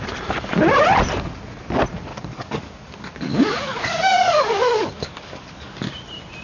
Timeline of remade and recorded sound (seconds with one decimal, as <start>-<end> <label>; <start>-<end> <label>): 0.0-2.1 recorded; 2.1-5.9 remade; 5.9-6.4 recorded